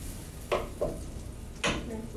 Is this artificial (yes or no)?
no